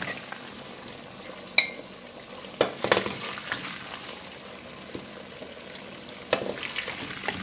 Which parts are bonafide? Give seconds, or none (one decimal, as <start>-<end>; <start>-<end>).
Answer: 0.0-7.4